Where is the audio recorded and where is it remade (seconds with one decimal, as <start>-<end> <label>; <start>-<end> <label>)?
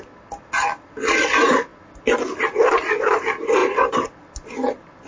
0.0-3.6 recorded; 3.6-4.1 remade; 4.1-5.1 recorded